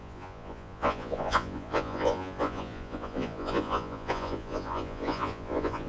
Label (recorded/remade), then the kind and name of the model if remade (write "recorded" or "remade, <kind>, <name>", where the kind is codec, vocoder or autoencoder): remade, vocoder, Vocos